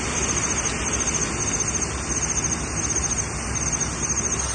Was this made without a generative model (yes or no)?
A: yes